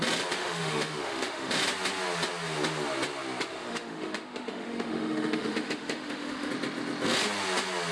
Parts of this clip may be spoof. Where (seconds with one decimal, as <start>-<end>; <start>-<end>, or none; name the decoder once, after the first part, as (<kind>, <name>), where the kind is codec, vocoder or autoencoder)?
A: 0.4-1.5 (autoencoder, DAC-VAE); 3.5-6.5